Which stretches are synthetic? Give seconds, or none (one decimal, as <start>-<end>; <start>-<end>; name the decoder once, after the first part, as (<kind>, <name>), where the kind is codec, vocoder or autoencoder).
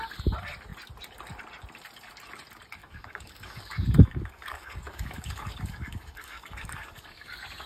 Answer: 2.8-7.7 (codec, DAC)